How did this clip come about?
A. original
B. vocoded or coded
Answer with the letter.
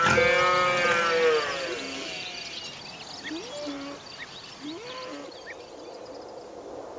A